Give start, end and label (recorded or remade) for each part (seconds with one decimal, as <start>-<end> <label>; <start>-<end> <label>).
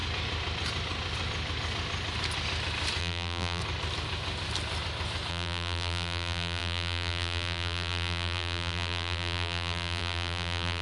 0.0-3.0 recorded; 3.0-3.6 remade; 3.6-5.3 recorded; 5.3-10.8 remade